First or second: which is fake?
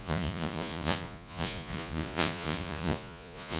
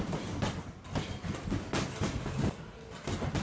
first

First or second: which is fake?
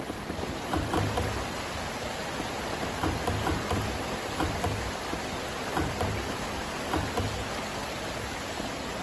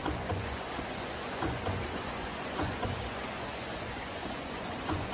second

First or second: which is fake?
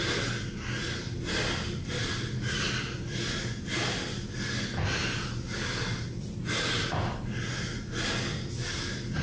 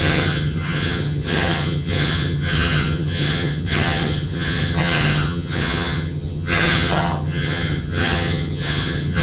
second